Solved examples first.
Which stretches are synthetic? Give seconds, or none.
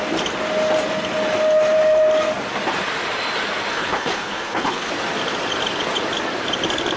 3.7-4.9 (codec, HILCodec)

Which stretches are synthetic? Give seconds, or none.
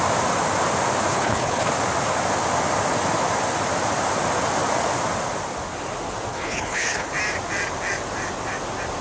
1.1-1.7 (codec, HILCodec); 6.3-7.1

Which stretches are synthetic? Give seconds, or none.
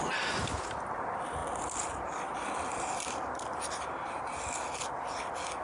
none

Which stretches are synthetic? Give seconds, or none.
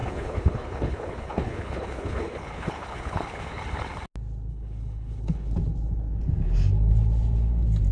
0.0-3.6 (codec, HILCodec); 4.5-5.5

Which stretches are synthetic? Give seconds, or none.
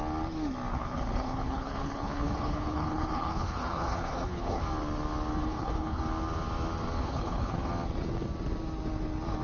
0.7-4.6 (codec, HILCodec); 5.4-6.0; 7.0-7.7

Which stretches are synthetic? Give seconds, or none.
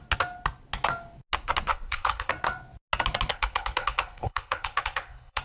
1.7-2.3 (codec, HILCodec); 3.3-5.4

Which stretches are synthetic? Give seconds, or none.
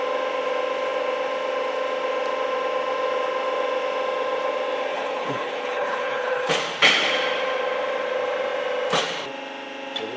4.9-6.5 (codec, HILCodec)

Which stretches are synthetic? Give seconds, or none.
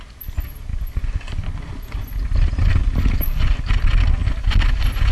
none